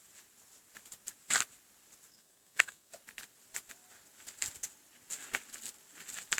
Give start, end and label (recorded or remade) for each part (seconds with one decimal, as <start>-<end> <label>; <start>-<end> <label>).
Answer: 0.0-2.1 recorded; 2.1-2.9 remade; 2.9-6.4 recorded